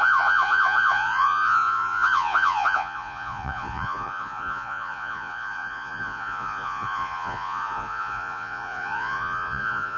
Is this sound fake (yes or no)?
yes